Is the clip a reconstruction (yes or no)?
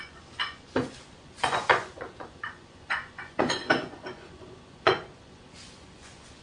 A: yes